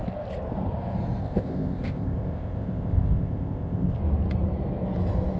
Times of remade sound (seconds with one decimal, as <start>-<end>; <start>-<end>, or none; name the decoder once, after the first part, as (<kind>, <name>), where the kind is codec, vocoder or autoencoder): 1.2-4.0 (codec, ZipCodec)

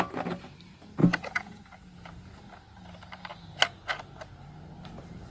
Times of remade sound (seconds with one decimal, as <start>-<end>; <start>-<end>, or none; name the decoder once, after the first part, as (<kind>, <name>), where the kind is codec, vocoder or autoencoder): 1.0-1.6 (vocoder, Vocos)

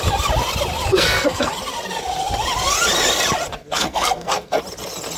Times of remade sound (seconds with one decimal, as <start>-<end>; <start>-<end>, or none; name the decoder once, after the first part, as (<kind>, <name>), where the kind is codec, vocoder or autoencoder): 0.9-1.5 (codec, SNAC); 3.5-4.6